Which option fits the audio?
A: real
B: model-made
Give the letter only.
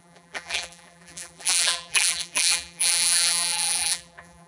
B